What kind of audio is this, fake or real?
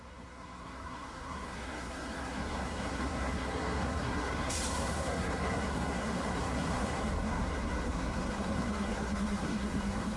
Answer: fake